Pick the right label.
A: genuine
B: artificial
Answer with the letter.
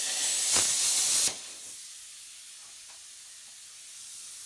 A